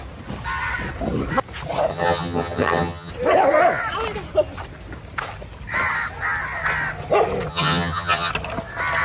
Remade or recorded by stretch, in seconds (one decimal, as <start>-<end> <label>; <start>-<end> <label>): 0.0-1.9 recorded; 1.9-3.1 remade; 3.1-7.5 recorded; 7.5-8.3 remade; 8.3-9.0 recorded

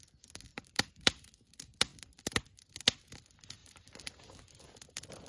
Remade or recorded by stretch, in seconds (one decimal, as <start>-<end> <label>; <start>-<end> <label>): 0.0-0.5 recorded; 0.5-1.3 remade; 1.3-3.6 recorded; 3.6-4.2 remade; 4.2-5.3 recorded

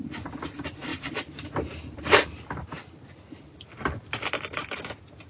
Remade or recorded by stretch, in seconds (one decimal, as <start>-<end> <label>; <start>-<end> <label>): 0.0-5.3 recorded